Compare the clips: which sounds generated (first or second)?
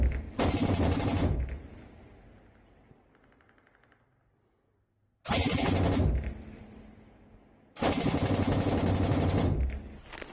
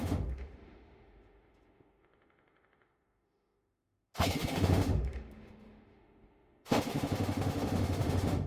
second